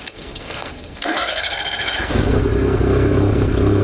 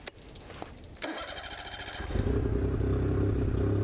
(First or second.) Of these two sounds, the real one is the second